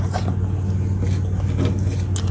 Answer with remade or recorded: recorded